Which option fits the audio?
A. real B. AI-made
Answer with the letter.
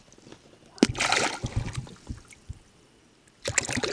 A